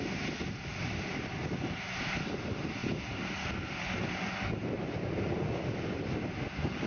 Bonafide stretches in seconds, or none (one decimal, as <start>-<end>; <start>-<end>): 0.0-6.9